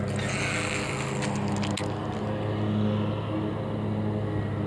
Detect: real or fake real